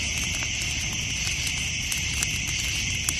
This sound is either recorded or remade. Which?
recorded